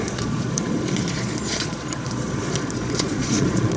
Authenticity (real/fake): fake